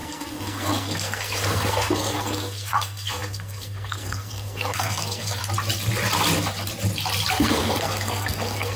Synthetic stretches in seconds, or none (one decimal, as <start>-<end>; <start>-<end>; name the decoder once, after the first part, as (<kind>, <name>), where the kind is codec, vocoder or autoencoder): 0.0-5.4 (codec, SNAC); 7.3-8.8